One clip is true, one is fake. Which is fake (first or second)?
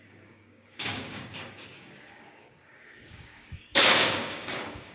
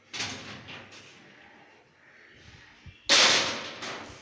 first